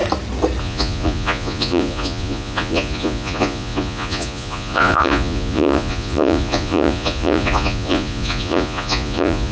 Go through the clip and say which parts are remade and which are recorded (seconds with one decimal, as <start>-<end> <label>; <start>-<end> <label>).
0.0-0.6 recorded; 0.6-9.5 remade

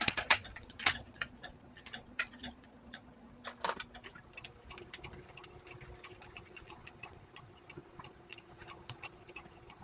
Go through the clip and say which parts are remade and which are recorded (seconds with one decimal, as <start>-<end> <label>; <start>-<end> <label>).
0.0-3.4 remade; 3.4-6.3 recorded; 6.3-9.8 remade

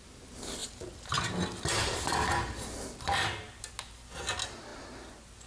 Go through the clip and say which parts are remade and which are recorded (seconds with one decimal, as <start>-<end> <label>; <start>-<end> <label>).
0.0-5.5 recorded